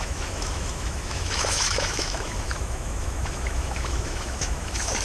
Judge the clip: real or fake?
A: fake